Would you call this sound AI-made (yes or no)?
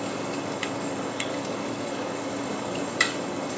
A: yes